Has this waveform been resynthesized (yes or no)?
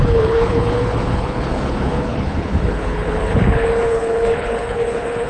yes